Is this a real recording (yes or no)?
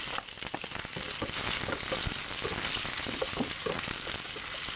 yes